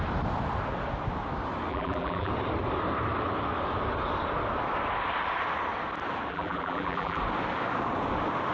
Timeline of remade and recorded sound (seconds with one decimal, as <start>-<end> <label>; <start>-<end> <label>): 0.0-1.7 recorded; 1.7-2.3 remade; 2.3-6.3 recorded; 6.3-7.2 remade; 7.2-8.5 recorded